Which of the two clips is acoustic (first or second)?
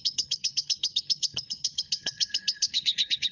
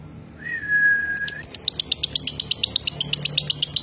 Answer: second